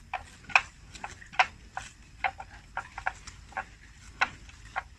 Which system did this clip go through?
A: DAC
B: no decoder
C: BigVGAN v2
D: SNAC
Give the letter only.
B